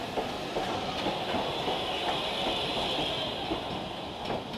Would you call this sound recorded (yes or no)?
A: yes